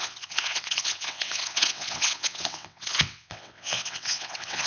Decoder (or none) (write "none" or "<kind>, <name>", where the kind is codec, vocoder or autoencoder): vocoder, WaveNeXt